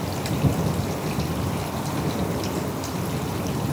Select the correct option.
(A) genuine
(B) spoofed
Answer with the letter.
A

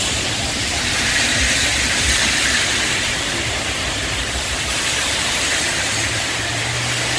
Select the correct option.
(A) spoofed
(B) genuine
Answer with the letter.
A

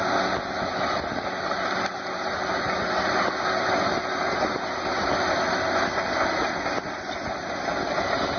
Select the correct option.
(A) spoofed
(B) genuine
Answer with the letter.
B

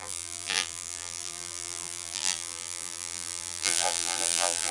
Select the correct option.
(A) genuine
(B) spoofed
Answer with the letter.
B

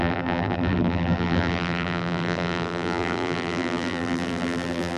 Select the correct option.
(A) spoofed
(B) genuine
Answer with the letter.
A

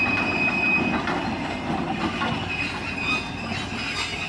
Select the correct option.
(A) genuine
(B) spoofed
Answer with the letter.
A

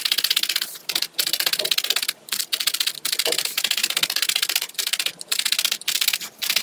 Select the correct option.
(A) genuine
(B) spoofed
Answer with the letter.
A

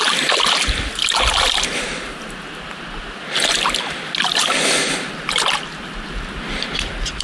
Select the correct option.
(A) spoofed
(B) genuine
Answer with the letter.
B